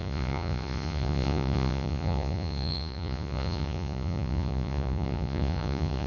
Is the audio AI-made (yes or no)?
yes